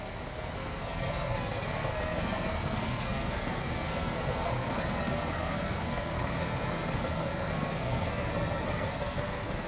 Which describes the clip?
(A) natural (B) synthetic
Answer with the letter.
B